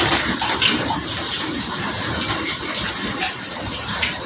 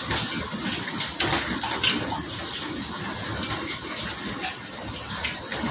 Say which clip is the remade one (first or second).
first